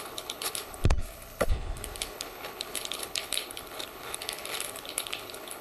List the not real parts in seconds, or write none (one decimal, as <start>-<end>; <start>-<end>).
0.0-5.6